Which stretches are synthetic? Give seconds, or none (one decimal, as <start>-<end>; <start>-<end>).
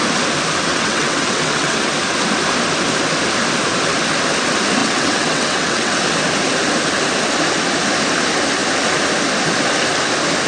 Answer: 0.7-1.8; 4.8-6.0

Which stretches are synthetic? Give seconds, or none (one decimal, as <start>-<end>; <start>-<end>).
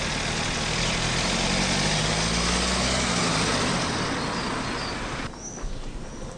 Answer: none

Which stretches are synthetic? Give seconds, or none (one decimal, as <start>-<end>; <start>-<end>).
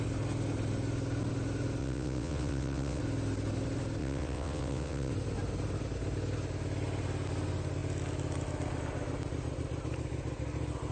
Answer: 1.8-3.0; 4.0-5.1